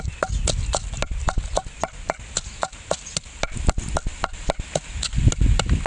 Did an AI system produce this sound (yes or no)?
no